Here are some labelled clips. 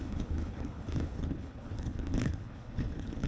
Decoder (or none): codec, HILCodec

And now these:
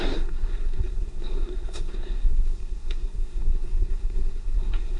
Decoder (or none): codec, SNAC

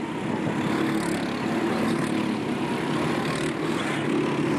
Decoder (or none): none